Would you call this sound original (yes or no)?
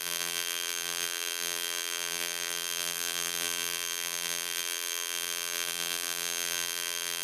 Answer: no